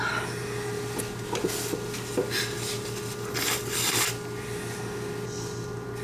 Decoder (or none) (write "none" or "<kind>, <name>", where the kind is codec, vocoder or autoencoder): none